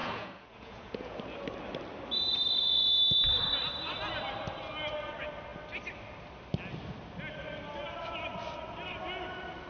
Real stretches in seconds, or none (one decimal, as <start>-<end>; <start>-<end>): 1.2-9.7